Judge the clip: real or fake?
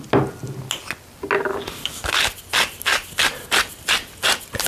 real